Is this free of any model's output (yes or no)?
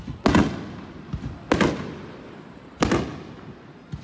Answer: yes